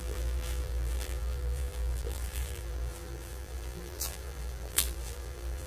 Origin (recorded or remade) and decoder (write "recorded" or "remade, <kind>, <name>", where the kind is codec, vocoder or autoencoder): remade, vocoder, BigVGAN v2